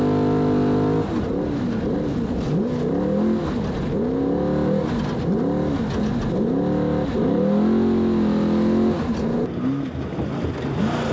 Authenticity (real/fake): real